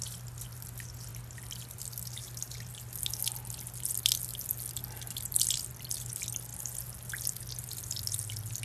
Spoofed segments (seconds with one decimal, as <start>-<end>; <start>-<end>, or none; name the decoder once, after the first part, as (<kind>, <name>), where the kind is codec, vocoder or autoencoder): none